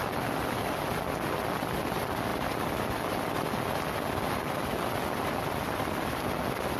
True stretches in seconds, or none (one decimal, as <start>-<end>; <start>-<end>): 0.0-6.8